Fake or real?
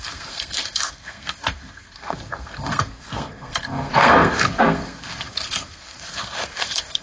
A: fake